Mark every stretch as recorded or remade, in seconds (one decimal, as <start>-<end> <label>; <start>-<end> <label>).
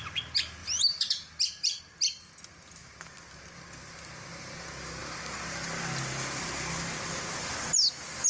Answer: 0.0-8.3 recorded